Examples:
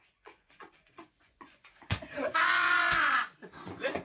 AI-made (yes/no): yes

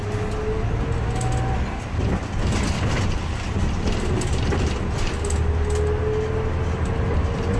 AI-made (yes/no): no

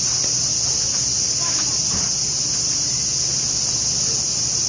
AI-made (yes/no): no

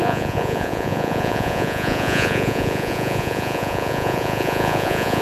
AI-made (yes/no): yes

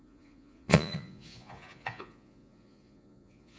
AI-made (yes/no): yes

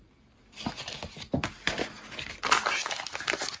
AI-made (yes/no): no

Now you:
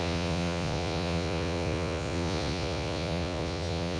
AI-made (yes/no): yes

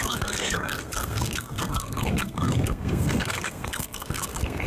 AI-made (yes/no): yes